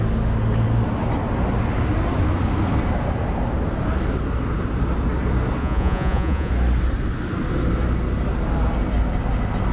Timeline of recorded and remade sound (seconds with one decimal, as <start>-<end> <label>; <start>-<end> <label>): 0.0-5.6 recorded; 5.6-6.5 remade; 6.5-9.7 recorded